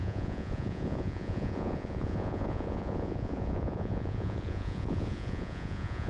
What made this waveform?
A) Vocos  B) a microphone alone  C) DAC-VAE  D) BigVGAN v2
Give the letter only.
A